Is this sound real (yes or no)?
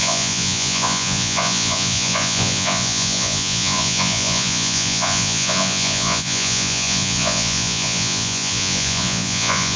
no